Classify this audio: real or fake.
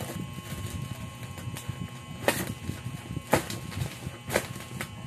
real